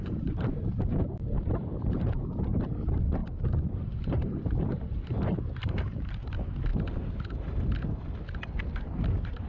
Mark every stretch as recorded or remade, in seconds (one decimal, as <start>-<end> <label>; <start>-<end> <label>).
0.0-6.7 remade; 6.7-8.8 recorded; 8.8-9.5 remade